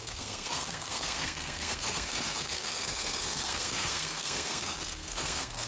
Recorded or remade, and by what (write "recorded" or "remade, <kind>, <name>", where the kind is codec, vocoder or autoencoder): remade, codec, SNAC